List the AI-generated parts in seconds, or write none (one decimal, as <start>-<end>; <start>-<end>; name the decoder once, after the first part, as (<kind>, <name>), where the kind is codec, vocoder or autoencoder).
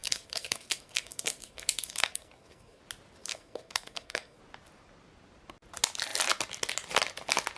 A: 0.0-2.8 (codec, SNAC); 3.2-4.4